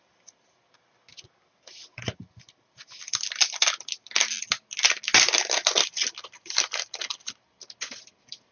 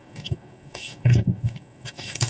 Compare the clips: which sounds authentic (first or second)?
first